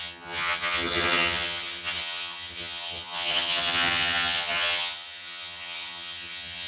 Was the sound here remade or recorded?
remade